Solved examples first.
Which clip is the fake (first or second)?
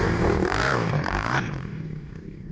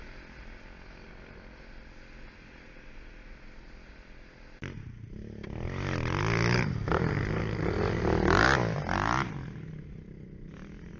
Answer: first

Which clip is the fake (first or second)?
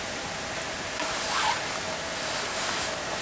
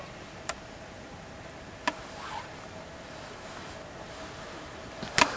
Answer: second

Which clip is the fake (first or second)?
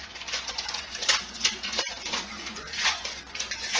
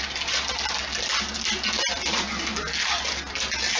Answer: first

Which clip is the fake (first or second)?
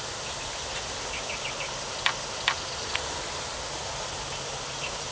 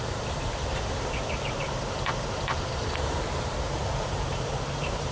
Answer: second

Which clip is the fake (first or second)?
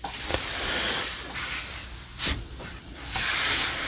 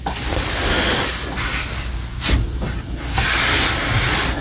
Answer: first